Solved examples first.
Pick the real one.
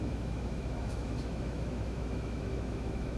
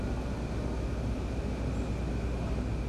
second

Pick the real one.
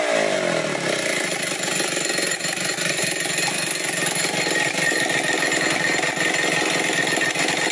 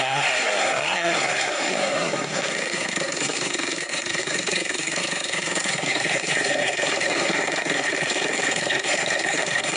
first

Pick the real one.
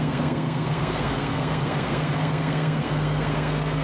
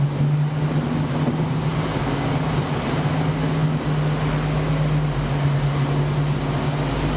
second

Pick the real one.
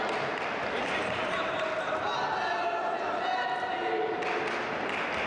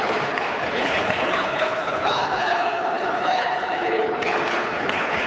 first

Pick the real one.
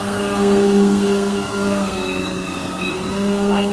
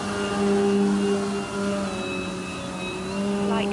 second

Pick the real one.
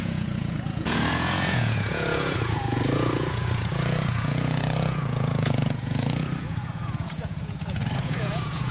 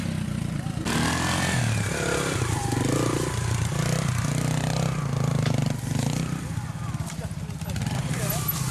second